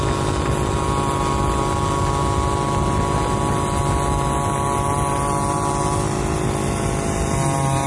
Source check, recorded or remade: recorded